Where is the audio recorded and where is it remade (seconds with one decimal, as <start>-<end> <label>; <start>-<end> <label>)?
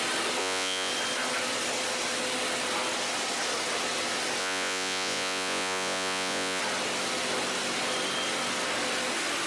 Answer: 0.0-0.4 recorded; 0.4-0.9 remade; 0.9-4.4 recorded; 4.4-6.6 remade; 6.6-9.5 recorded